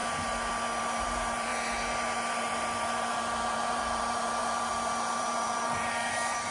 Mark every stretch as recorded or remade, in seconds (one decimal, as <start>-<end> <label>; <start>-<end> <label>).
0.0-0.8 recorded; 0.8-1.5 remade; 1.5-2.4 recorded; 2.4-6.5 remade